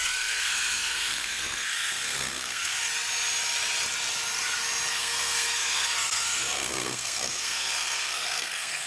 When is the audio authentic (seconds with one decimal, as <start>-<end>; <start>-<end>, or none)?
2.9-4.9